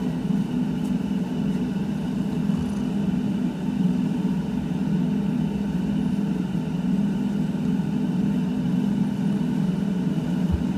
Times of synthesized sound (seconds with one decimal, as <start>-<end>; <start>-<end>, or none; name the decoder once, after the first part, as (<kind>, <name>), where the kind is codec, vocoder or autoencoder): none